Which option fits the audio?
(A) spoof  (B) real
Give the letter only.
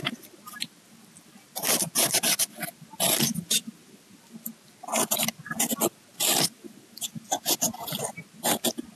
B